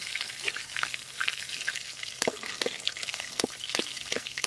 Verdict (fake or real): fake